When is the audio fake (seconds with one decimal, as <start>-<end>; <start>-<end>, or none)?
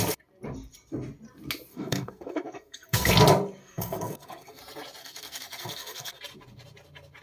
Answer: 1.7-3.1; 3.6-4.6; 5.0-6.2